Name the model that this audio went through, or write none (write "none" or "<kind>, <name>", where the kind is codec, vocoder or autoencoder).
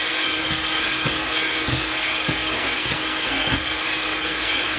codec, SNAC